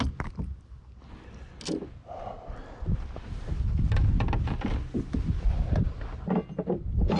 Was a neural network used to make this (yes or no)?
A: no